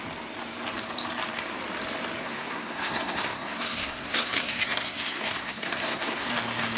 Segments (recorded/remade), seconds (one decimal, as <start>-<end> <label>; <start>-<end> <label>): 0.0-2.2 recorded; 2.2-6.3 remade; 6.3-6.8 recorded